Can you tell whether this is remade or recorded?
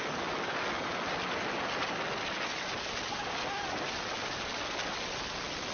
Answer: recorded